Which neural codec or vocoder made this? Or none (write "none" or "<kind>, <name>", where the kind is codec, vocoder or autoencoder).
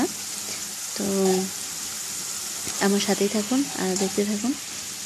none